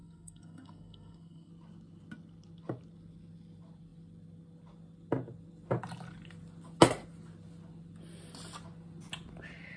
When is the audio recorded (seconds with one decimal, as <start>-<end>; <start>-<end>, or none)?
1.5-9.8